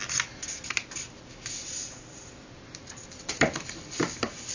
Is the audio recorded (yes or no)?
yes